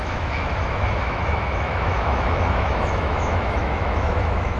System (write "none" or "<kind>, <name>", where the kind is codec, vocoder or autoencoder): autoencoder, DAC-VAE